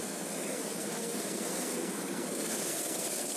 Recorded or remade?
remade